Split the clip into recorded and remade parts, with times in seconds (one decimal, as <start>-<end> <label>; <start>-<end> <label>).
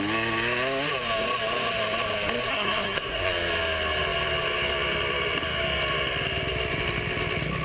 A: 0.0-2.5 recorded; 2.5-3.3 remade; 3.3-7.6 recorded